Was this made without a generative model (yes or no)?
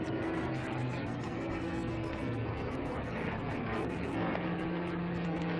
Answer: no